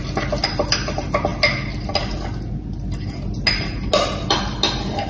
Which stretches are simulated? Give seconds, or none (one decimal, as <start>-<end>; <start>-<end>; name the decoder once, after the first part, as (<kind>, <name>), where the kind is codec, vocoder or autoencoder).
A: none